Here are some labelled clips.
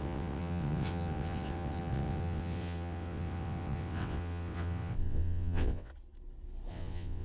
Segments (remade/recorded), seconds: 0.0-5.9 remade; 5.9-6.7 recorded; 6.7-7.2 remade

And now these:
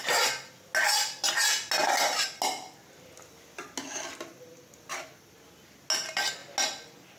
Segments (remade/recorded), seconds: 0.0-7.2 recorded

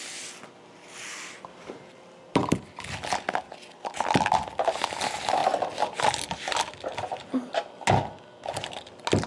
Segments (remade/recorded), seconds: 0.0-9.3 recorded

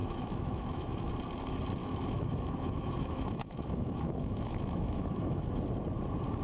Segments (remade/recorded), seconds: 0.0-1.1 remade; 1.1-1.8 recorded; 1.8-5.6 remade; 5.6-6.4 recorded

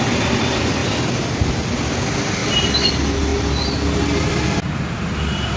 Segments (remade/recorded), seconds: 0.0-0.8 recorded; 0.8-1.5 remade; 1.5-2.4 recorded; 2.4-2.9 remade; 2.9-5.6 recorded

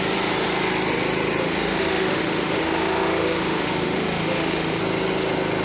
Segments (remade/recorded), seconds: 0.0-1.4 recorded; 1.4-4.8 remade; 4.8-5.6 recorded

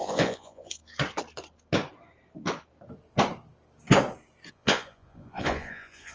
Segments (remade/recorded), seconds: 0.0-0.8 remade; 0.8-4.5 recorded; 4.5-6.1 remade